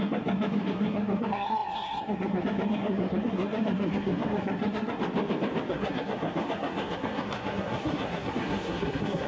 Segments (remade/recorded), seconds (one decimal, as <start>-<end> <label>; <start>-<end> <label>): 0.0-5.0 remade; 5.0-5.7 recorded; 5.7-9.3 remade